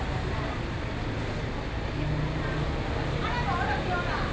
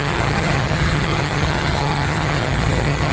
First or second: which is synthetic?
second